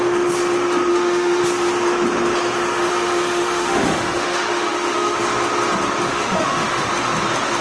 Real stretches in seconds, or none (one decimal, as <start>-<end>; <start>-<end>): 0.0-0.9; 1.4-2.9; 5.2-6.1; 6.9-7.6